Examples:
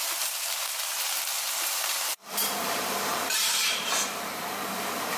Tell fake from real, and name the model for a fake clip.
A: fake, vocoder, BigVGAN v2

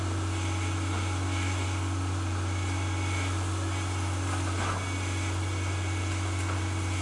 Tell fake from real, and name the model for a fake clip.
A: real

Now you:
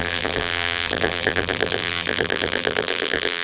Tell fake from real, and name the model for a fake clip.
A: fake, vocoder, BigVGAN v2